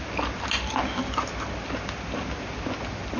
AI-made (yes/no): no